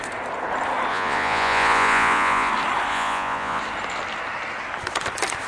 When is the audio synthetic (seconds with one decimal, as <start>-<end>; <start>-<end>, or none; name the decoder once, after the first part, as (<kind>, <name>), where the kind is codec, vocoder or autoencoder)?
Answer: 0.9-2.5 (vocoder, Vocos); 2.9-3.6